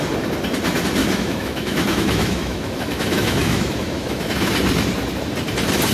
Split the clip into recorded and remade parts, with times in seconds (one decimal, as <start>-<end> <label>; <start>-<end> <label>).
0.0-1.0 recorded; 1.0-4.5 remade; 4.5-5.9 recorded